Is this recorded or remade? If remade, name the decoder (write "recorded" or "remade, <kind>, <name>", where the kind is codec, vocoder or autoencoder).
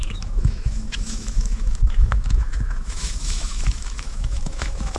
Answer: remade, autoencoder, DAC-VAE